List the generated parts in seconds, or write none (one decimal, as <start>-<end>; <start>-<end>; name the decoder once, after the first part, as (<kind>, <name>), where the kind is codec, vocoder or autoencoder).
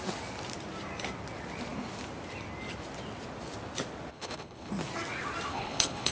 4.1-4.7 (codec, HILCodec); 5.5-6.1